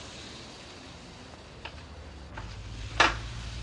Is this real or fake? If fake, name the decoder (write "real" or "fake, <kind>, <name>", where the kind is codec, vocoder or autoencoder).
real